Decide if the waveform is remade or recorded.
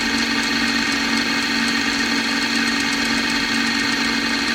recorded